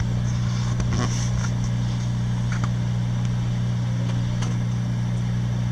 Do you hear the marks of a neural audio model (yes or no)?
no